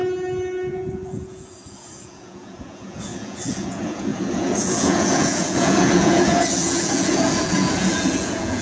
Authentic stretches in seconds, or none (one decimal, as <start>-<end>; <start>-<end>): 0.0-0.7